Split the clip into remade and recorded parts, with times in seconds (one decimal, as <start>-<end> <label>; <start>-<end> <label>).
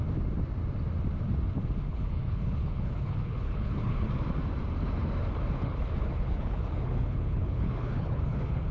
0.0-1.9 recorded; 1.9-4.1 remade; 4.1-5.5 recorded; 5.5-8.7 remade